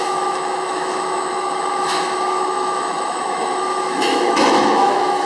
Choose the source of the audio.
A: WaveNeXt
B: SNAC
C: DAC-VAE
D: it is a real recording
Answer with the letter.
C